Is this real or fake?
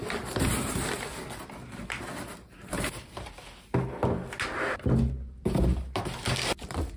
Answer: real